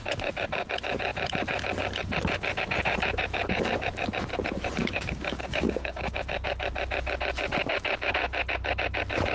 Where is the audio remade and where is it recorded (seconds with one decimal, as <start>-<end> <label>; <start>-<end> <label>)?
0.0-4.8 recorded; 4.8-6.2 remade; 6.2-9.3 recorded

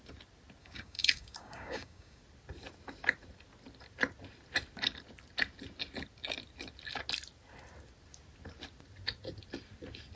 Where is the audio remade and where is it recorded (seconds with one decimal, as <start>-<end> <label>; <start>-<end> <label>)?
0.0-0.6 recorded; 0.6-2.2 remade; 2.2-10.2 recorded

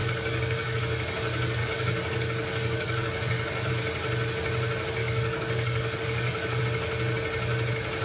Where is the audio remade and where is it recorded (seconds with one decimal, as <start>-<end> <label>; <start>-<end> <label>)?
0.0-0.8 remade; 0.8-1.6 recorded; 1.6-3.7 remade; 3.7-5.0 recorded; 5.0-6.6 remade; 6.6-8.0 recorded

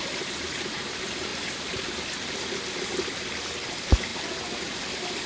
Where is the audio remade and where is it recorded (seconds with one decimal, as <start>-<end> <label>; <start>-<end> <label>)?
0.0-5.3 recorded

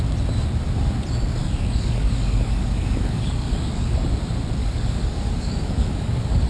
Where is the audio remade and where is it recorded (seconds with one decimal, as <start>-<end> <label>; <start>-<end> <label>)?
0.0-1.4 recorded; 1.4-4.1 remade; 4.1-4.6 recorded; 4.6-6.5 remade